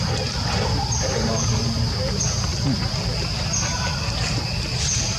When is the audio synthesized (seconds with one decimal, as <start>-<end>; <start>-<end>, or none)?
none